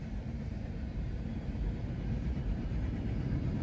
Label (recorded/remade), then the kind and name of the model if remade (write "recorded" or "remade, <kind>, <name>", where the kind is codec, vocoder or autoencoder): remade, vocoder, BigVGAN v2